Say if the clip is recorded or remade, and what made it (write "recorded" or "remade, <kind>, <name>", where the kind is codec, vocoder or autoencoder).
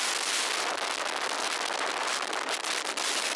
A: recorded